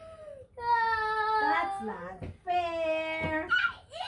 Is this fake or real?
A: real